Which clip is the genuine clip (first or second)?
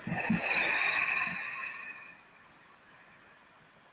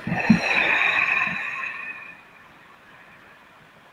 first